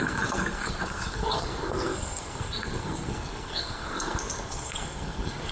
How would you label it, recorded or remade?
remade